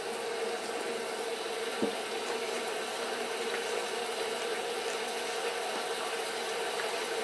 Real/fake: real